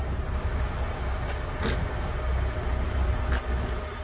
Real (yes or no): yes